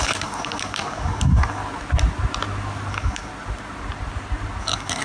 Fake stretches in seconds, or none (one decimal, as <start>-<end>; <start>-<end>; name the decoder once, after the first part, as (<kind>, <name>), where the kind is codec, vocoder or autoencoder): 0.0-1.6 (codec, DAC); 2.9-3.3; 4.6-5.0